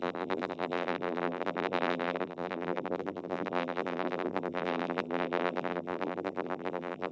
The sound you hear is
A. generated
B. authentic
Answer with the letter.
A